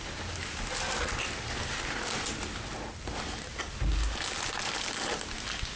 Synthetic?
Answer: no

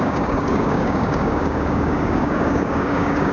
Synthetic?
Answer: yes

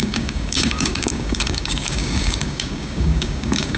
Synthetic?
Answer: yes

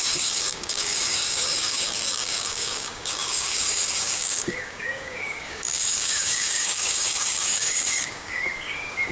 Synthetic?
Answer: yes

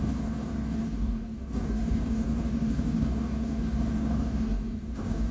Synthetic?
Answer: yes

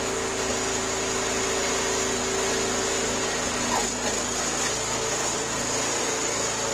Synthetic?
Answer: no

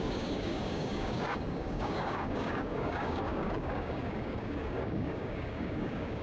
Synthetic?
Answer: yes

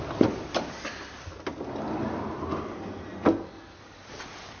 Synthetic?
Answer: no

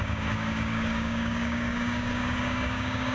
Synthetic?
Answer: yes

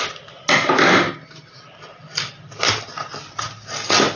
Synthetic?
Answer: no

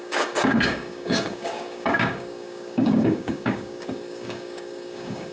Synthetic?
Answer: yes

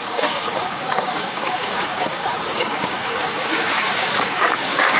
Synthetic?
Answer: yes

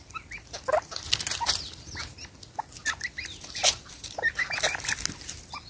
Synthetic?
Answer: no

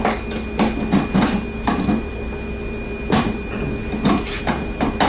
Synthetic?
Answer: no